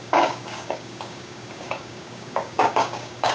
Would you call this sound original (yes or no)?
no